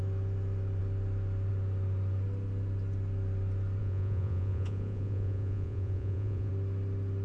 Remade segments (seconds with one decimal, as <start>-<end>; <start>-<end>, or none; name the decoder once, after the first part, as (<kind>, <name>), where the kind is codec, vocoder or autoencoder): 3.8-6.5 (vocoder, Vocos)

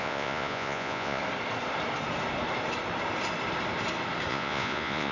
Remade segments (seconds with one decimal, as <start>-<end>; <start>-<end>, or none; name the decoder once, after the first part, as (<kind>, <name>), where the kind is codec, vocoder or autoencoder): 0.0-1.2 (vocoder, Vocos); 4.3-5.1

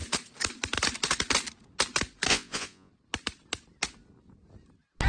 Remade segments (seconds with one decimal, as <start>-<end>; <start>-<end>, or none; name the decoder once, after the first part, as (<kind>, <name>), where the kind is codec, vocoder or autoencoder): 2.3-2.9 (vocoder, Vocos)

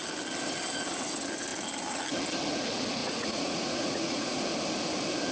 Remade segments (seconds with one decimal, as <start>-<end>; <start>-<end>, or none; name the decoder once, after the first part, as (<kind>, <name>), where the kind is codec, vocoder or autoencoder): 3.0-4.4 (vocoder, Vocos)

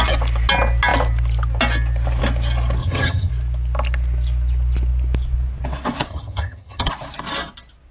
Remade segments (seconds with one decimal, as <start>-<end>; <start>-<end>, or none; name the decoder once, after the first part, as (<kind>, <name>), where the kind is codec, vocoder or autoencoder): 2.8-3.3 (vocoder, HiFi-GAN); 6.1-6.9

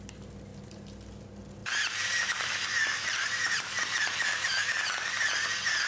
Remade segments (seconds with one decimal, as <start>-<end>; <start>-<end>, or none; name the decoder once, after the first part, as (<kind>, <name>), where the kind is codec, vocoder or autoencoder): 1.6-5.1 (vocoder, BigVGAN v2)